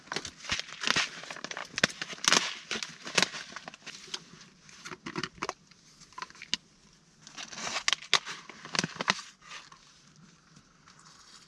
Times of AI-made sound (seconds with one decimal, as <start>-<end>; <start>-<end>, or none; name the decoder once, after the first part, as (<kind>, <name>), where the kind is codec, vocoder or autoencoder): none